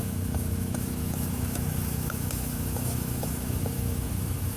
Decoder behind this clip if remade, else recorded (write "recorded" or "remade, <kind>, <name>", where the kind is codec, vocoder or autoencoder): remade, autoencoder, DAC-VAE